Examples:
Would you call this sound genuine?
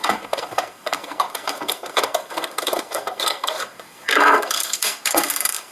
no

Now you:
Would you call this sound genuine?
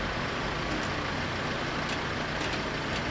yes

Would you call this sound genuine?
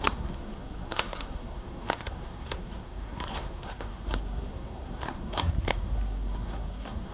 no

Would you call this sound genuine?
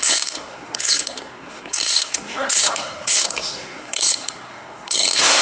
no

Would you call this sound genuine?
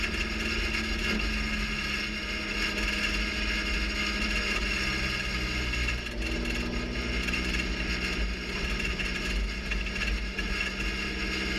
yes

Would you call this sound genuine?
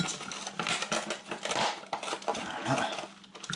yes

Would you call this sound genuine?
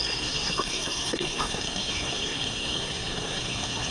no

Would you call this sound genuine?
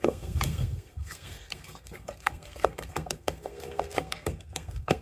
no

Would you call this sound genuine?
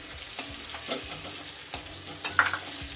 yes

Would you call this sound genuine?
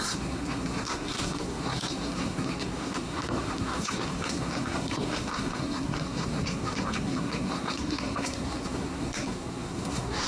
no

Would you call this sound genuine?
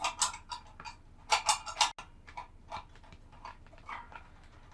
yes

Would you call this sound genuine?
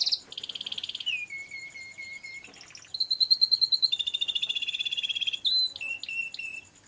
yes